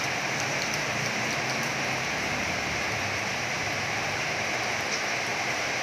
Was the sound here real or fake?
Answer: fake